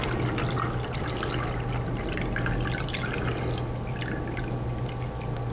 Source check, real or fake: real